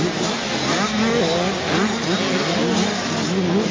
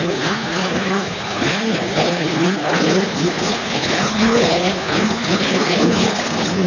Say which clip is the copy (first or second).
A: second